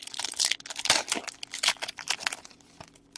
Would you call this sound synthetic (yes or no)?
no